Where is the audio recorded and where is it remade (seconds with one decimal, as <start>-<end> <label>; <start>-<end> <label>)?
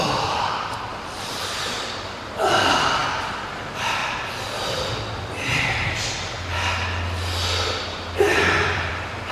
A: 0.0-3.0 remade; 3.0-3.6 recorded; 3.6-4.0 remade; 4.0-8.2 recorded; 8.2-9.3 remade